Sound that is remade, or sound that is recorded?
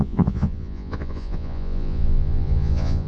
remade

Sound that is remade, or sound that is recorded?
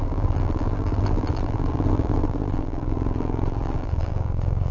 remade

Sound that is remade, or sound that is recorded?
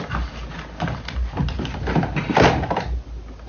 recorded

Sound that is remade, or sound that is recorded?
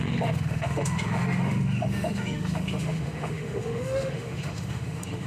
remade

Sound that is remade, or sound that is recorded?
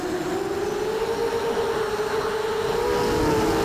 recorded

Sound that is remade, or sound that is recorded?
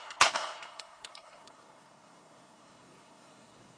remade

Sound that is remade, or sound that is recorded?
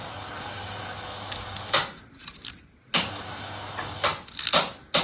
recorded